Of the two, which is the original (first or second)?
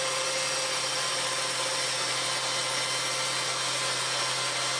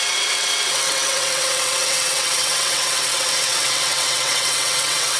first